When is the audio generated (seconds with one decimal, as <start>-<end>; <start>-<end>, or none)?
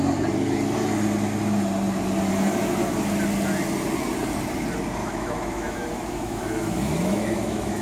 5.0-7.8